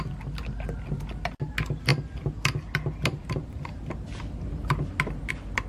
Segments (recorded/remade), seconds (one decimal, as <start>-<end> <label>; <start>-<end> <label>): 0.0-5.7 recorded